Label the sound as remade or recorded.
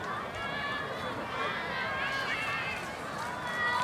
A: recorded